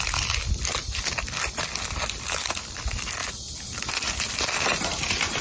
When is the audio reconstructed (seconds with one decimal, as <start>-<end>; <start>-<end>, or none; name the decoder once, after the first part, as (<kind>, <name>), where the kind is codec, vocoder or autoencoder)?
3.2-4.3 (vocoder, BigVGAN v2); 4.7-5.4